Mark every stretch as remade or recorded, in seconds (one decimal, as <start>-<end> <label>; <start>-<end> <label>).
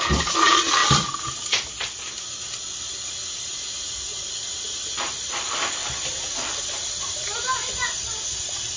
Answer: 0.0-8.8 recorded